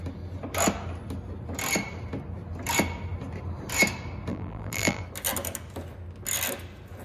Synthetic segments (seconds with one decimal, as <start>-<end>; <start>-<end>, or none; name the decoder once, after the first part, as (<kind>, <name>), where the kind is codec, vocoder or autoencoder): 4.3-5.0 (vocoder, BigVGAN v2)